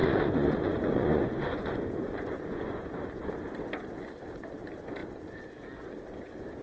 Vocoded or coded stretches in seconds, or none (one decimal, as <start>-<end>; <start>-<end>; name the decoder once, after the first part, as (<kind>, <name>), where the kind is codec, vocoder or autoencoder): 0.0-3.3 (vocoder, Vocos)